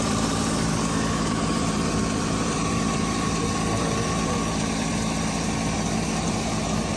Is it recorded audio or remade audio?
remade